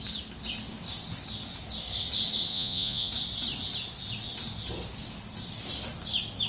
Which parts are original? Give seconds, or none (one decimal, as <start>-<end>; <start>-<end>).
0.0-2.5; 3.1-6.5